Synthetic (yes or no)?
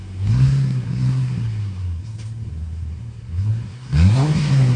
yes